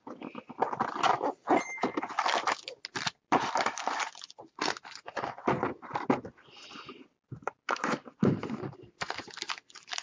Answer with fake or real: real